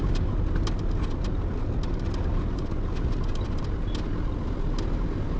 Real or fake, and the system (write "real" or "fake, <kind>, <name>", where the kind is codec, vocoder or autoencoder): real